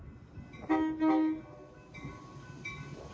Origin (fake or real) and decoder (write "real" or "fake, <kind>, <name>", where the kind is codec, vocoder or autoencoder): real